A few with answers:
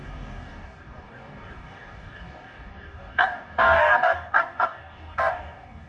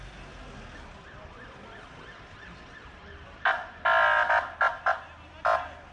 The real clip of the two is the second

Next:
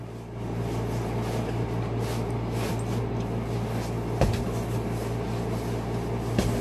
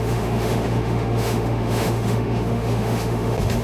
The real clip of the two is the first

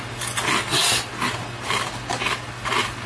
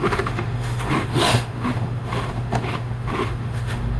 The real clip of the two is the first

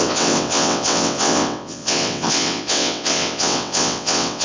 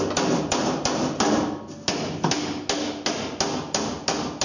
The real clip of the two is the second